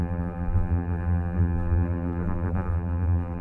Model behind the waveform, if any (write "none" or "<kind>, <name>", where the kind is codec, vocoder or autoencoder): vocoder, BigVGAN v2